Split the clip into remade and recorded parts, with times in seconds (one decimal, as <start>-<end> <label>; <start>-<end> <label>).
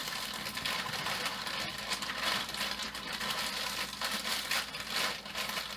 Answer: 0.0-5.8 recorded